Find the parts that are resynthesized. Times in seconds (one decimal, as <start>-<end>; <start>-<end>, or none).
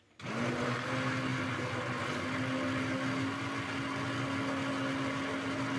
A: none